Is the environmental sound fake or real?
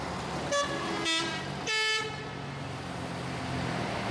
real